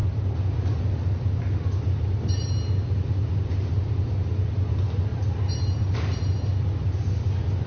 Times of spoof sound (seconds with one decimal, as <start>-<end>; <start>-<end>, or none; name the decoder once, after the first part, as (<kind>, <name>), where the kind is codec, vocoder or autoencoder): none